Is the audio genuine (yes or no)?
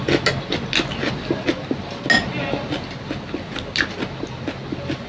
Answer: yes